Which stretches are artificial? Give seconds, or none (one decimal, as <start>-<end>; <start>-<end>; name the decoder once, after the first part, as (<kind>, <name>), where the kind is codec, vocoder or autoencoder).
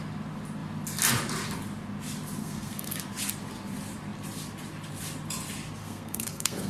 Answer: 2.4-3.0 (codec, SNAC); 5.8-6.7